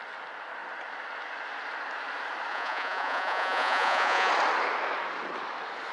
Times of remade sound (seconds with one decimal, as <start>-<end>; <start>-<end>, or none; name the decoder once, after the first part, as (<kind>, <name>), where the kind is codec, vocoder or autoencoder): 2.5-4.3 (vocoder, Vocos)